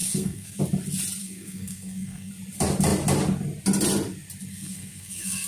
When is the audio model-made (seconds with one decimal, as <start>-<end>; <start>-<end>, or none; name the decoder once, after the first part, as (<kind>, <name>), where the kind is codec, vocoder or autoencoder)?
0.0-0.6 (codec, SNAC); 1.2-2.3; 4.5-5.5